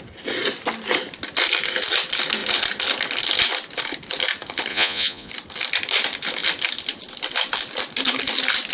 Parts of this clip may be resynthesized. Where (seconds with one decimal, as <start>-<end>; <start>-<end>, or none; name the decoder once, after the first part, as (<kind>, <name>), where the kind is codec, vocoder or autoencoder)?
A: 4.7-5.3 (vocoder, Vocos)